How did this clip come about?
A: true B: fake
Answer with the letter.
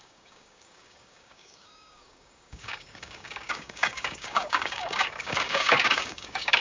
B